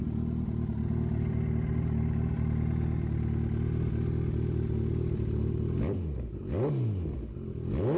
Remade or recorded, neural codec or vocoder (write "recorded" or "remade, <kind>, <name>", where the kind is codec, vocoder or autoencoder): recorded